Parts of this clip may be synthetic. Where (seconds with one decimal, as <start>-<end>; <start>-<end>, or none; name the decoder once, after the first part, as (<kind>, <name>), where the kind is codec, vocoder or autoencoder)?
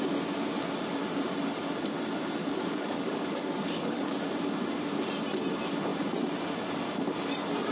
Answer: 2.4-4.0 (codec, DAC)